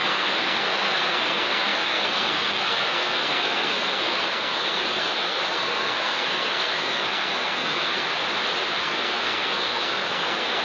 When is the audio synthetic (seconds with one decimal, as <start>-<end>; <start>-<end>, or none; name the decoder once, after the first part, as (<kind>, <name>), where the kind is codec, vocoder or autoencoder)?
0.0-8.2 (codec, SNAC); 8.8-10.6